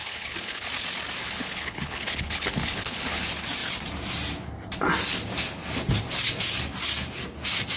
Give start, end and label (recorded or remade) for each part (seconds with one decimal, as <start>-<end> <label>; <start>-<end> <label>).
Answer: 0.0-0.7 remade; 0.7-1.2 recorded; 1.2-3.2 remade; 3.2-7.8 recorded